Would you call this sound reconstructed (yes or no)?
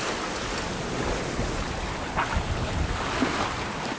no